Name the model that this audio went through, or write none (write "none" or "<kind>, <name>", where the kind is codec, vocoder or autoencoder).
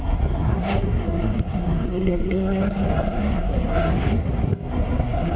codec, SNAC